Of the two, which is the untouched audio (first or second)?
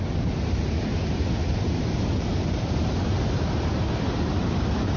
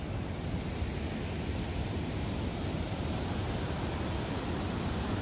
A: second